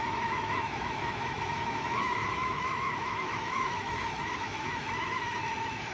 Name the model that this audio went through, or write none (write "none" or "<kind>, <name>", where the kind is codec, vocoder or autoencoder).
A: autoencoder, DAC-VAE